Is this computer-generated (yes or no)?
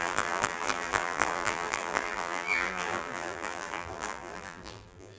yes